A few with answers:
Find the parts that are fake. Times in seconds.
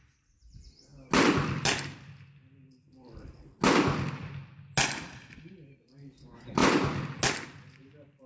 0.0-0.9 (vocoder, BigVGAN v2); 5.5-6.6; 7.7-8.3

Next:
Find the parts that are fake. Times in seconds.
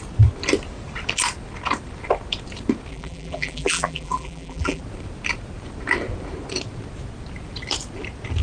2.9-4.8 (vocoder, BigVGAN v2)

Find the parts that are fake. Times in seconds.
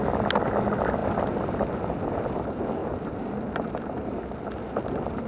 2.8-4.2 (vocoder, BigVGAN v2)